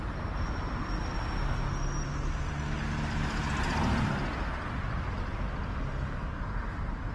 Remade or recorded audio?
recorded